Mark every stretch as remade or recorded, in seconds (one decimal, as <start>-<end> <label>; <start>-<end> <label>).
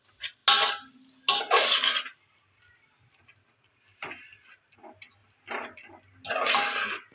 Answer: 0.0-3.9 recorded; 3.9-4.5 remade; 4.5-7.1 recorded